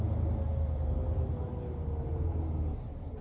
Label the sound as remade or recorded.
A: recorded